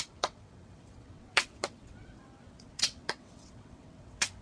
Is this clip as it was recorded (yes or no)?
no